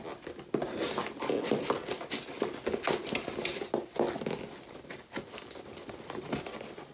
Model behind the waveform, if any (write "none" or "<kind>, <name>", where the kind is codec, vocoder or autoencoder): none